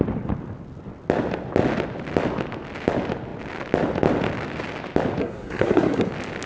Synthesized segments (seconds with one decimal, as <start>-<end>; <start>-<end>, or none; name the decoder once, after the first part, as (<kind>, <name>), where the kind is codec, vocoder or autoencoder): 5.2-6.1 (codec, SNAC)